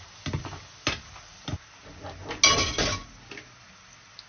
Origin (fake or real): real